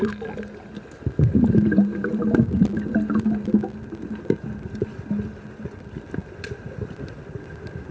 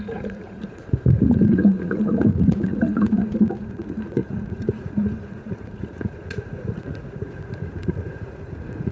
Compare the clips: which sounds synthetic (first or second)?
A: second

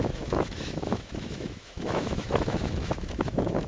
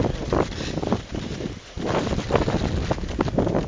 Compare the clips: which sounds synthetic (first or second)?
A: first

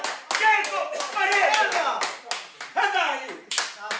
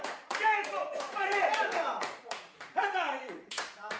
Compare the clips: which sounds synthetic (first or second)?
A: second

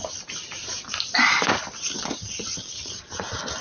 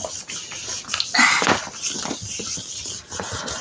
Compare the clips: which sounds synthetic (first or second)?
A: first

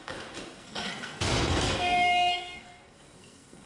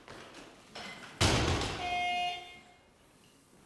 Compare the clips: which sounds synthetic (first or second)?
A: first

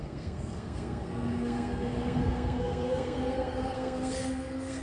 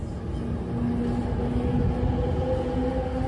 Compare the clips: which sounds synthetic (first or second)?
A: first